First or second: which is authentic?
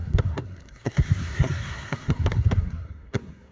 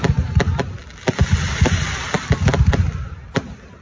second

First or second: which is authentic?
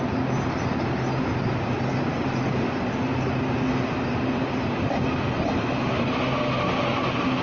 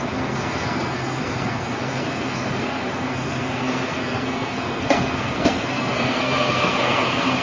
first